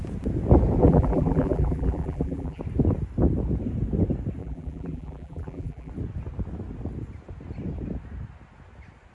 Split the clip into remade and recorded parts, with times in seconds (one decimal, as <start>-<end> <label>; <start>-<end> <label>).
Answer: 0.0-0.8 recorded; 0.8-2.6 remade; 2.6-4.4 recorded; 4.4-5.9 remade; 5.9-9.1 recorded

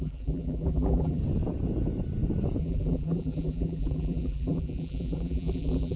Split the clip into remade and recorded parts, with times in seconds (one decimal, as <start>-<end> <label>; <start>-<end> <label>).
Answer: 0.0-1.2 remade; 1.2-2.6 recorded; 2.6-6.0 remade